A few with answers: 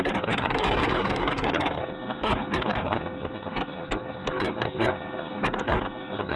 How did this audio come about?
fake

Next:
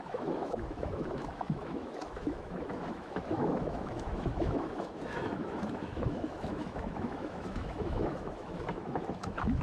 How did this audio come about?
fake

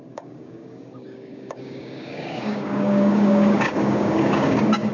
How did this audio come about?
fake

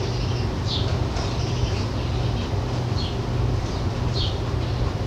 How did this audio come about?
real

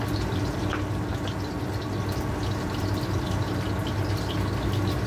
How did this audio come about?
real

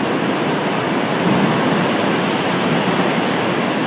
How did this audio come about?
real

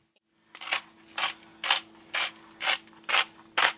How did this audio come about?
real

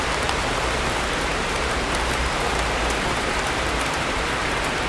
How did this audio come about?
fake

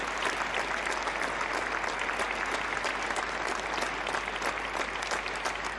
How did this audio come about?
real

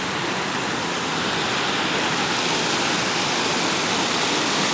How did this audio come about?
real